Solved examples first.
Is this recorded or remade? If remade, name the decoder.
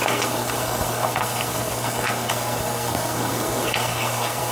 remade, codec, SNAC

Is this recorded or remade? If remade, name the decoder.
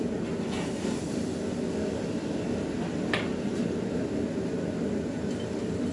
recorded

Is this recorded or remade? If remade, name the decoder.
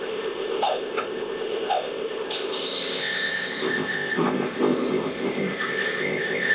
remade, codec, ZipCodec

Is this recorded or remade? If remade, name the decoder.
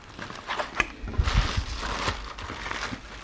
recorded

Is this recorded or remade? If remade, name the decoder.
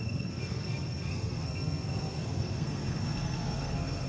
remade, codec, SNAC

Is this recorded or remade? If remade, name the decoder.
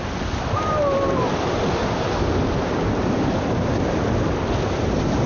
recorded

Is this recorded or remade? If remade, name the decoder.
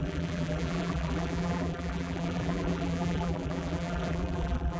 remade, vocoder, BigVGAN v2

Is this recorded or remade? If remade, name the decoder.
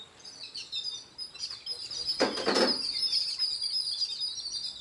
recorded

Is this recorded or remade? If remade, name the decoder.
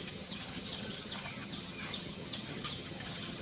remade, vocoder, HiFi-GAN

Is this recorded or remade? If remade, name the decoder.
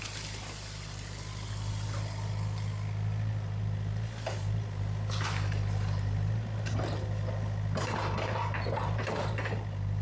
recorded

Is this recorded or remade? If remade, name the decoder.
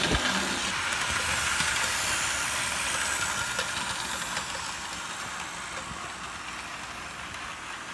recorded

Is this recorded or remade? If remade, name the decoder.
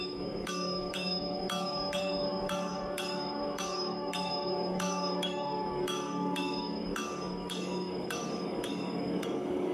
remade, codec, DAC